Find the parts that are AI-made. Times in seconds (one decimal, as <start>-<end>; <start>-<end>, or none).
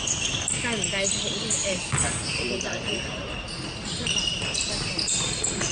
1.6-4.7